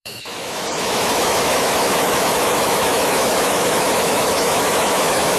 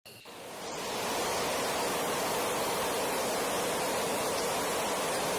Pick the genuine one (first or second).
second